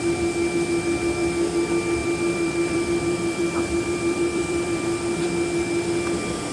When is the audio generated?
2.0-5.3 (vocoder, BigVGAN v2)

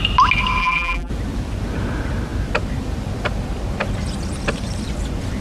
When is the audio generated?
0.6-1.1 (vocoder, BigVGAN v2)